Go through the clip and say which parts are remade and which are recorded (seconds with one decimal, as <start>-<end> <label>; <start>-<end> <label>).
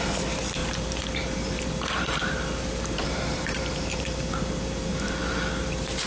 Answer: 0.0-5.2 remade; 5.2-6.1 recorded